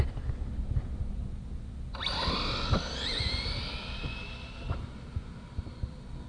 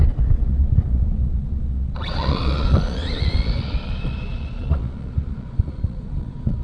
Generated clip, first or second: second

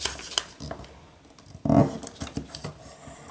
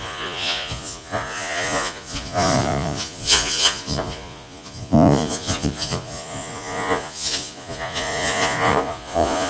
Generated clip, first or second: second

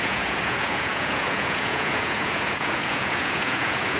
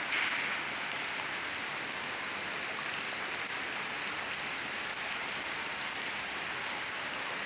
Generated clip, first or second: first